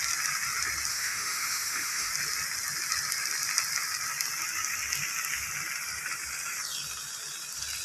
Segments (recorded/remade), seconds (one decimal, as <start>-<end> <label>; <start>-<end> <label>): 0.0-0.9 recorded; 0.9-2.1 remade; 2.1-7.8 recorded